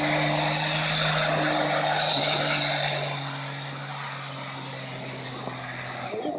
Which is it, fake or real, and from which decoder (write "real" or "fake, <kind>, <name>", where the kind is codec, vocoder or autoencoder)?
real